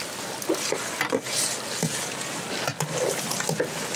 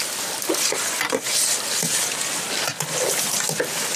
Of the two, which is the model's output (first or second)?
second